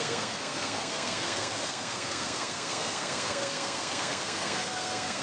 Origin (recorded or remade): remade